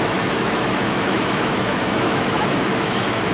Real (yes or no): no